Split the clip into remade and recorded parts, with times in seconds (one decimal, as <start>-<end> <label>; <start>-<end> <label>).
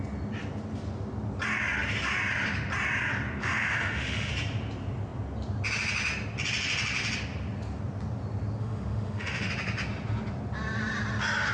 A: 0.0-3.4 recorded; 3.4-4.3 remade; 4.3-8.6 recorded; 8.6-9.5 remade; 9.5-11.5 recorded